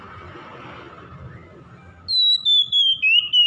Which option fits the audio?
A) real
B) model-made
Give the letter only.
A